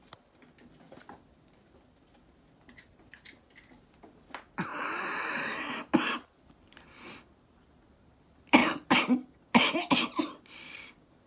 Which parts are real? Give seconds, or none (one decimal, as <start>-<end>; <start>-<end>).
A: 0.0-11.3